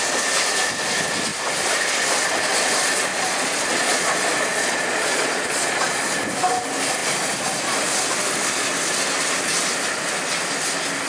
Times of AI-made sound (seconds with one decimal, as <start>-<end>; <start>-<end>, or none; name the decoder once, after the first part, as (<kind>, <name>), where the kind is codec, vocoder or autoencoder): 3.1-4.1 (vocoder, Vocos); 4.5-6.0